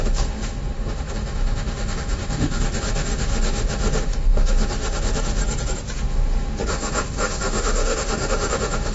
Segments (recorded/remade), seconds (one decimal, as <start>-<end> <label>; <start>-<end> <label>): 0.0-5.4 remade; 5.4-6.0 recorded; 6.0-8.9 remade